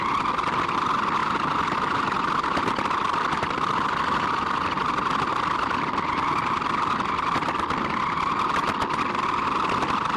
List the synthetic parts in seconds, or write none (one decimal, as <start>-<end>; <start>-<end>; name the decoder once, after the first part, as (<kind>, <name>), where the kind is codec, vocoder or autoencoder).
none